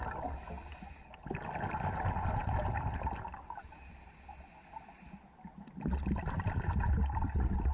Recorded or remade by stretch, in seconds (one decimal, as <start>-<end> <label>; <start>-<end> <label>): 0.0-7.7 recorded